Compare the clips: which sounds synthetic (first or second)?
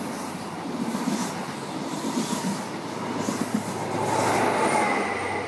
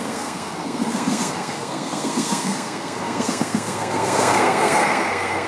second